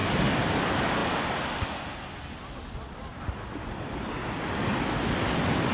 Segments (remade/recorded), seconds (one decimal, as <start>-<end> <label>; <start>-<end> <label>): 0.0-5.7 recorded